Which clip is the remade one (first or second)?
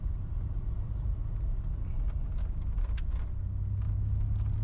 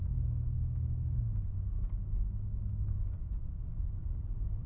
second